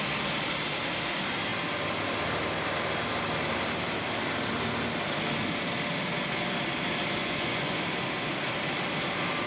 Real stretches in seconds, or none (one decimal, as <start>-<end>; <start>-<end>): 0.0-7.2; 7.8-9.5